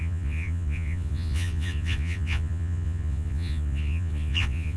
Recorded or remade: remade